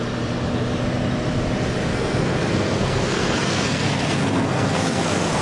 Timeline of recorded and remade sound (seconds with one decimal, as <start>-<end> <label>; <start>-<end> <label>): 0.0-1.9 recorded; 1.9-5.4 remade